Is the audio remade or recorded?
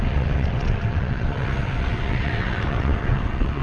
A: remade